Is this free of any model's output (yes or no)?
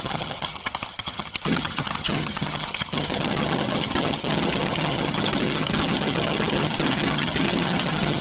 no